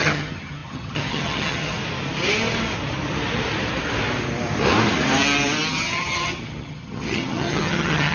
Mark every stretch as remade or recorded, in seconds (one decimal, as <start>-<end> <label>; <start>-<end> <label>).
0.0-1.8 remade; 1.8-5.7 recorded; 5.7-8.1 remade